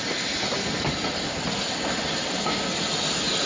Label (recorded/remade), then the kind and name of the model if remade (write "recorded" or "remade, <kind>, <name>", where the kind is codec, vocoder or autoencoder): recorded